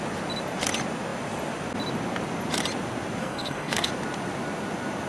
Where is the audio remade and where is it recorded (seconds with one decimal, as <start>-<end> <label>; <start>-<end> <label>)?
0.0-3.2 recorded; 3.2-3.9 remade; 3.9-5.1 recorded